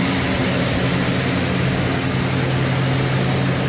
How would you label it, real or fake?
real